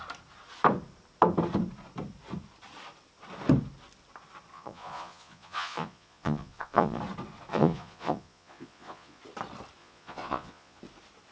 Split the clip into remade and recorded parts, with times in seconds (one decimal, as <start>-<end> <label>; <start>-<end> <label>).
0.0-4.5 recorded; 4.5-7.0 remade; 7.0-7.5 recorded; 7.5-9.2 remade; 9.2-9.8 recorded; 9.8-10.8 remade; 10.8-11.3 recorded

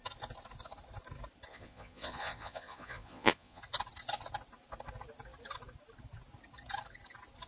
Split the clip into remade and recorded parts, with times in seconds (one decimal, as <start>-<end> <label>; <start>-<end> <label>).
0.0-1.5 recorded; 1.5-3.6 remade; 3.6-7.5 recorded

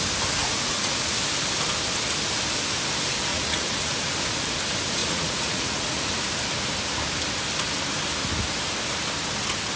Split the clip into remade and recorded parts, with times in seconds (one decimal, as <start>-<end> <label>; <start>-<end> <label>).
0.0-0.4 recorded; 0.4-1.1 remade; 1.1-3.3 recorded; 3.3-4.1 remade; 4.1-5.0 recorded; 5.0-6.1 remade; 6.1-9.8 recorded

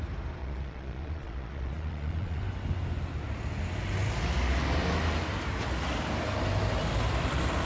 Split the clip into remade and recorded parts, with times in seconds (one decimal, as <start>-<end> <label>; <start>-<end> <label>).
0.0-0.4 recorded; 0.4-2.4 remade; 2.4-7.7 recorded

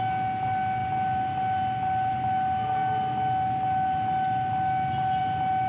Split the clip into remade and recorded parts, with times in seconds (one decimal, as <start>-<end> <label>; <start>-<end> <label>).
0.0-5.7 recorded